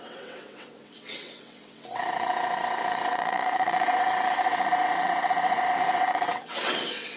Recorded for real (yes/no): no